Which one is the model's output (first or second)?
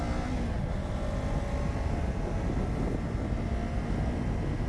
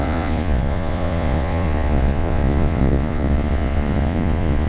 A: second